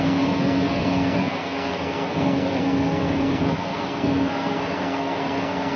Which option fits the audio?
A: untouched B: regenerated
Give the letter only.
B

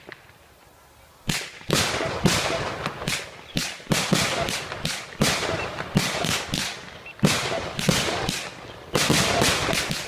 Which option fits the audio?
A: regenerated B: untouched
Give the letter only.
B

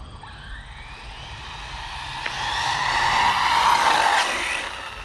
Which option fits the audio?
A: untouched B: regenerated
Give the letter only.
A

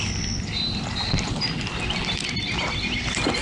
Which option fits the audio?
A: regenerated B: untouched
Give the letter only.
B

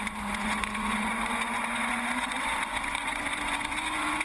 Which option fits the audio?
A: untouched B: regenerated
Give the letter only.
B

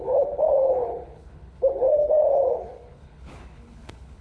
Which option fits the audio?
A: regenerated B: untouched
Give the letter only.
A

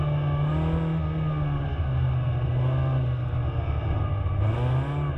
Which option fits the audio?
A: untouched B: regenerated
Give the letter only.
A